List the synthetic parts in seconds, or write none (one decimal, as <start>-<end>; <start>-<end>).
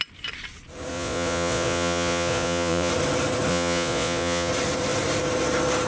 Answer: 0.9-2.9; 3.5-4.5